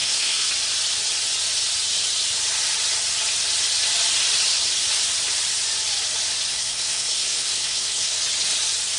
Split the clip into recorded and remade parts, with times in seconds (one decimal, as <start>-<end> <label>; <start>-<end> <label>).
0.0-0.5 remade; 0.5-6.5 recorded; 6.5-8.2 remade; 8.2-9.0 recorded